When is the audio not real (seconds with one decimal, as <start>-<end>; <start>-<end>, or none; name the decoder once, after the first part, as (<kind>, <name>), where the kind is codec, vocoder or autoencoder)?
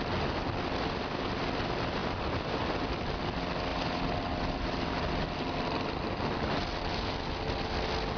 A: 2.0-3.1 (vocoder, BigVGAN v2); 3.7-6.6